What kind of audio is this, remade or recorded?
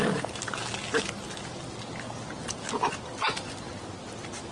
recorded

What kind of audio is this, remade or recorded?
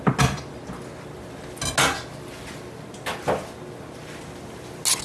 recorded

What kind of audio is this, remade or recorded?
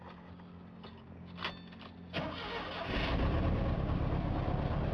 recorded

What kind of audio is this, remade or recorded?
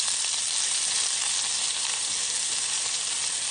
recorded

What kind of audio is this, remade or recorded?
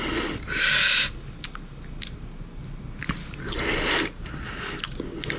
recorded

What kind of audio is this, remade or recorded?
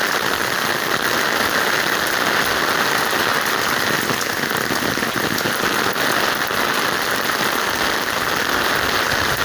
recorded